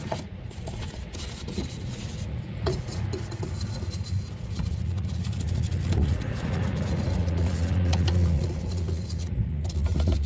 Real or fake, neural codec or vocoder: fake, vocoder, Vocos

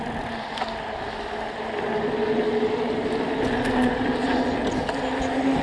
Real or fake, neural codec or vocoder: real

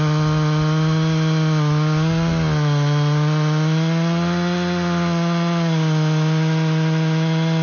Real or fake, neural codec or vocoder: real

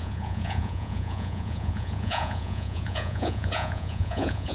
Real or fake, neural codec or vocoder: fake, vocoder, Vocos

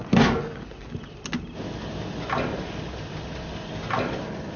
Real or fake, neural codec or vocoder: real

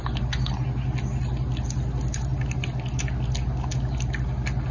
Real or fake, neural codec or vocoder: real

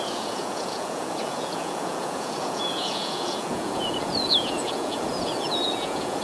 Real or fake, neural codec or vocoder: fake, vocoder, Vocos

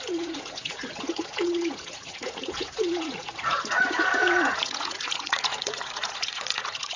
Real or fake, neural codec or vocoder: fake, vocoder, Vocos